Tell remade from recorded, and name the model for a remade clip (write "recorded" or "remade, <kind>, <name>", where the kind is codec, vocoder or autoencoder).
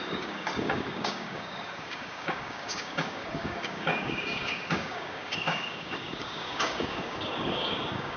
remade, codec, DAC